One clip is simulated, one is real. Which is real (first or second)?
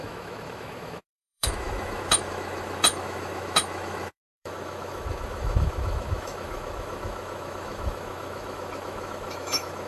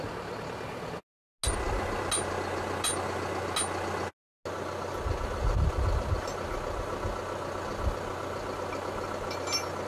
second